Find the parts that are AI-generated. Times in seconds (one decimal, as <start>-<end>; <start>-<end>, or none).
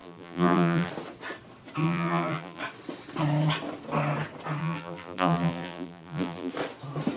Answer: 0.0-0.9; 1.8-2.6; 4.6-6.5